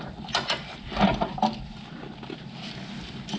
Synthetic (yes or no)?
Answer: no